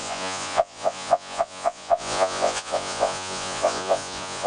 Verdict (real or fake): fake